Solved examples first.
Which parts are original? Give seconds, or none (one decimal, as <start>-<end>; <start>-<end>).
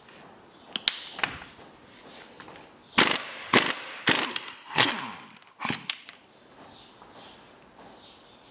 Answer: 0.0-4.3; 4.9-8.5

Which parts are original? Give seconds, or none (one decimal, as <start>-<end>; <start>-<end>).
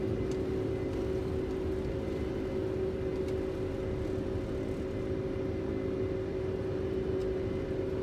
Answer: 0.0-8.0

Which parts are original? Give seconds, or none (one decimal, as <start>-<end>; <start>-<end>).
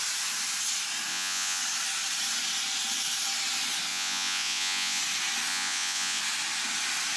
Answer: 0.0-1.1; 1.6-3.9; 5.0-5.5; 6.2-7.2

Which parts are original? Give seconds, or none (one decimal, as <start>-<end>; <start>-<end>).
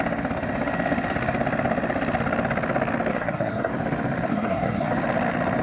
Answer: 0.0-3.1; 3.7-4.3; 4.9-5.6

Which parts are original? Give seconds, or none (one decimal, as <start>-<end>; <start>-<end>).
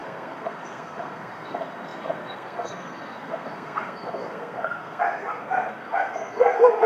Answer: none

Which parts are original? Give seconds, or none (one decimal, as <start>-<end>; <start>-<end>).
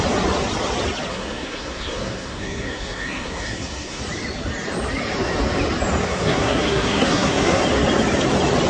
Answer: 0.0-1.1; 4.0-6.0; 7.6-8.7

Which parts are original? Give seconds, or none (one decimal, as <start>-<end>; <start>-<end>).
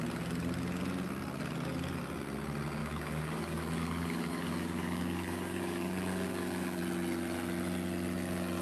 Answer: 0.0-2.8; 6.8-8.6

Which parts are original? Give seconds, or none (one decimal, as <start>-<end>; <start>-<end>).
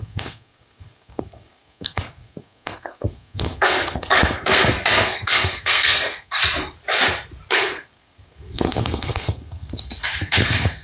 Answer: 6.4-7.5